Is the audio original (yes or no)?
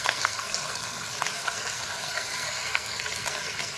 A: no